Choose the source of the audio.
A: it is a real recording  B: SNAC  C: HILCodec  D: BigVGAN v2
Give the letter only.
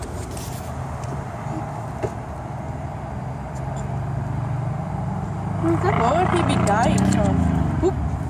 A